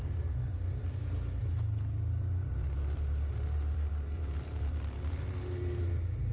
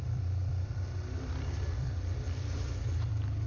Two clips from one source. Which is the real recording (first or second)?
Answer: first